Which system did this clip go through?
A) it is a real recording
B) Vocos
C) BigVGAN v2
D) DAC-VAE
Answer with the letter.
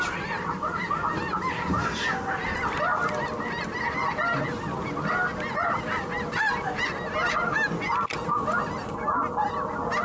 A